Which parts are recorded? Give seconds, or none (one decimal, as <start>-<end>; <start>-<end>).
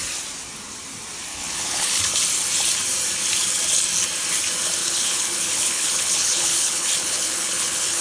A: 0.0-1.3; 2.0-4.8